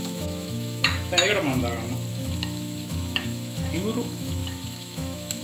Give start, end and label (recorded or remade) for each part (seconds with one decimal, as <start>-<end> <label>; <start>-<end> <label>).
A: 0.0-1.6 remade; 1.6-2.1 recorded; 2.1-5.4 remade